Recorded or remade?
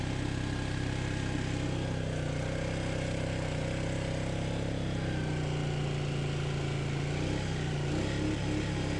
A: recorded